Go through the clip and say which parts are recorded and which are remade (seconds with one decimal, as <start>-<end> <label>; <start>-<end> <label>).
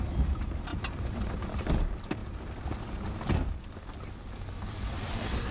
0.0-2.2 remade; 2.2-4.7 recorded; 4.7-5.5 remade